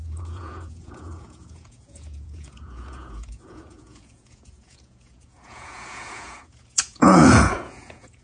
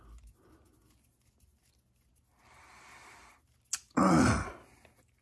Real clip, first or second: second